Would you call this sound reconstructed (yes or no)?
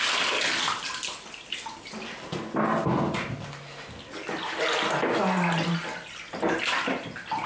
no